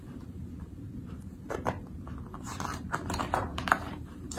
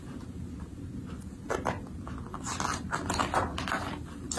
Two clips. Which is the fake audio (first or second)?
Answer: first